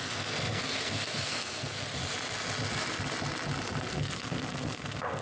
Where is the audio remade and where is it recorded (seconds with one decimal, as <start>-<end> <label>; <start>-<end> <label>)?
0.0-2.0 remade; 2.0-3.9 recorded; 3.9-5.2 remade